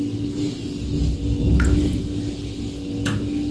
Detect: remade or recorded recorded